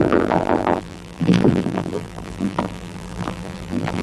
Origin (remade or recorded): remade